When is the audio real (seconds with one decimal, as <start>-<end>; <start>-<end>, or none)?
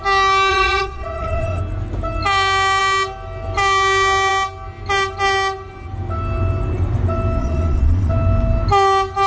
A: 0.0-0.5; 1.6-7.4; 8.1-9.3